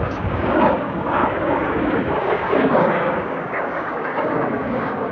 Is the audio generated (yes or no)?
yes